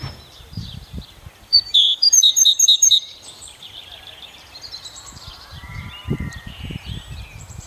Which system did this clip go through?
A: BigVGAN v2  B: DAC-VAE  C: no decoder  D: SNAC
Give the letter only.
A